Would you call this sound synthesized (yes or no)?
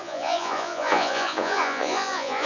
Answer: yes